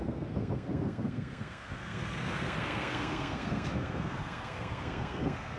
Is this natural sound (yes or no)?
no